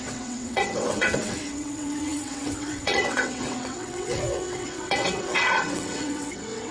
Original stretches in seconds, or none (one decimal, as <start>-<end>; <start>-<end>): none